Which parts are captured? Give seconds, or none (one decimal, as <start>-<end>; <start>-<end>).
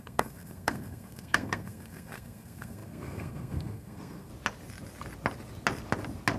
4.3-6.4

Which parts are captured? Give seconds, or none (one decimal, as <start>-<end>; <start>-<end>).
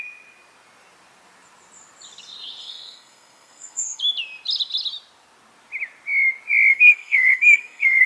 0.0-2.6; 4.0-6.7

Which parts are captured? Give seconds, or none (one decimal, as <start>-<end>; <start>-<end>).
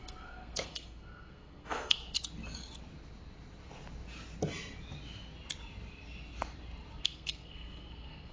2.0-7.0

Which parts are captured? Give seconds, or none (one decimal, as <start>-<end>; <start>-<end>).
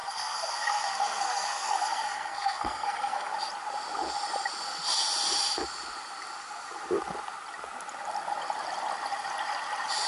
3.3-10.1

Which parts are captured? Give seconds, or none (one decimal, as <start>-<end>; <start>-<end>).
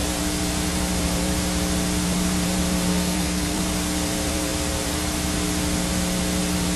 0.0-2.9; 3.6-6.8